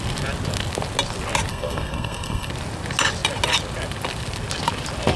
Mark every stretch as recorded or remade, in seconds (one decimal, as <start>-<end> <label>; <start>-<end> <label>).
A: 0.0-1.5 recorded; 1.5-2.5 remade; 2.5-5.2 recorded